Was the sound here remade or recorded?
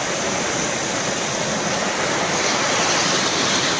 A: recorded